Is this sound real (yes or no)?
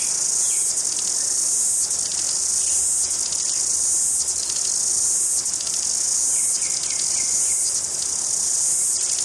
yes